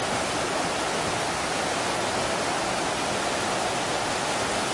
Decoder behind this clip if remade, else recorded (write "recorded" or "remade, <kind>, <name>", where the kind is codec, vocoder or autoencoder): recorded